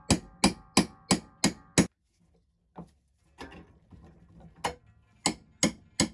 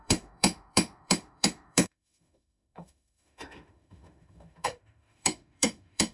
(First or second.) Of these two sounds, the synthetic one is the second